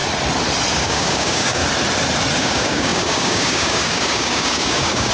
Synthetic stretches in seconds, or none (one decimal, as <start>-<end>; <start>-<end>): 0.7-1.6; 2.4-5.1